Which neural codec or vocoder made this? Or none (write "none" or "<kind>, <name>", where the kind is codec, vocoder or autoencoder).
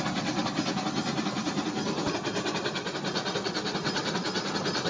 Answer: none